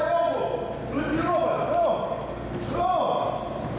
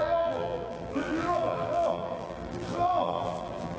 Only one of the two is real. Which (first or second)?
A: first